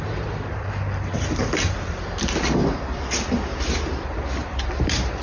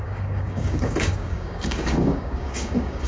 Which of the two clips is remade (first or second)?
second